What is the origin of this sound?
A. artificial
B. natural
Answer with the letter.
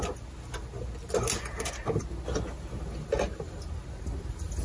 B